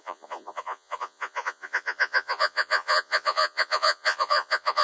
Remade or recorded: remade